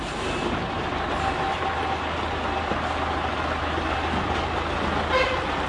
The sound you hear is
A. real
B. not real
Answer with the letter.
A